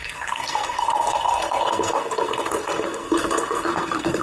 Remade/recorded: remade